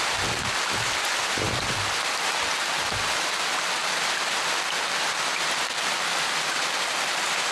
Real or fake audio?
real